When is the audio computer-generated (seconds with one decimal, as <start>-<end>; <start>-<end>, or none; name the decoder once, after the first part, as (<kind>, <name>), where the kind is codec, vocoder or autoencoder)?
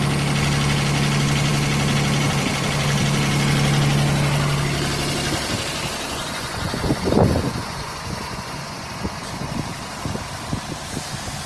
6.1-9.6 (vocoder, Vocos)